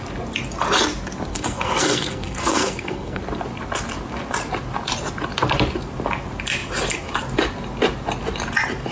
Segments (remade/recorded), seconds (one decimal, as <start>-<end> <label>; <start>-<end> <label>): 0.0-1.3 recorded; 1.3-3.2 remade; 3.2-8.9 recorded